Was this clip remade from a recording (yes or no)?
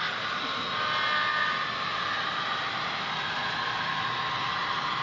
no